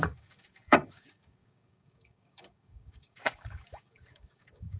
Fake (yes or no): yes